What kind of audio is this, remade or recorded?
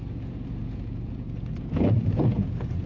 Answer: remade